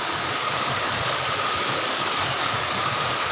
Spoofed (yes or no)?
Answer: yes